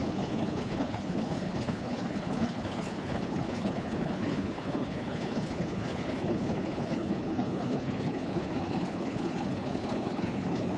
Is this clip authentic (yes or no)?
no